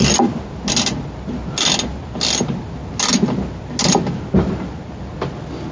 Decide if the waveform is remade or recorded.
recorded